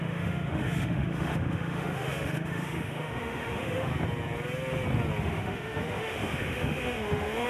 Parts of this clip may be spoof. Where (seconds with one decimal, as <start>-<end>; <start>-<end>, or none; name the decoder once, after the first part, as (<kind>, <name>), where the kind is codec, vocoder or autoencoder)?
0.0-3.9 (autoencoder, DAC-VAE); 5.2-7.5

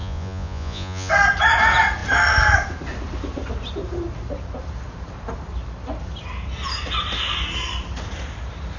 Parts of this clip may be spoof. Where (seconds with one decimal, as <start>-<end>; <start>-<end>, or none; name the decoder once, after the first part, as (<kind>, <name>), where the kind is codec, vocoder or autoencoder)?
0.0-1.1 (vocoder, Vocos)

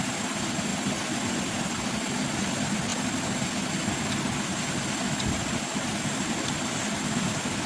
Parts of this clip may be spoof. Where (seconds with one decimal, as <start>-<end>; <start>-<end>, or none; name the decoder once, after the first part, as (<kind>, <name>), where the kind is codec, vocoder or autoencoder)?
none

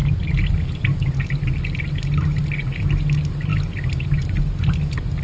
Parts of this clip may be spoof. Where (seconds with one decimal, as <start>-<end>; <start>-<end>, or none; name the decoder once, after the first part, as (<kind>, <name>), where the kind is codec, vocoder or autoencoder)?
none

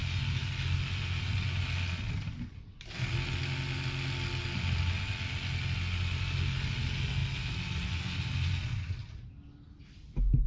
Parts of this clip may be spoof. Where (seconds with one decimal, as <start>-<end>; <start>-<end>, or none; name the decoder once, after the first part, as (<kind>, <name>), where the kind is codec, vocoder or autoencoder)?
none

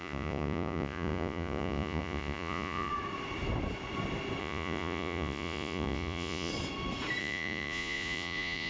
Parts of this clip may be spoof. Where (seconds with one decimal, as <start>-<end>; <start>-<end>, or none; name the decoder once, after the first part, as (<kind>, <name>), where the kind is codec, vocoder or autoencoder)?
0.0-2.9 (vocoder, Vocos); 4.4-6.5; 7.2-8.7

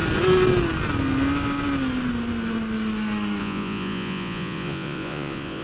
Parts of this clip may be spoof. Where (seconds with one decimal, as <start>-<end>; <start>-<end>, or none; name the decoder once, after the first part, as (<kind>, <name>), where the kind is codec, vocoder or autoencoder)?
3.4-5.6 (vocoder, Vocos)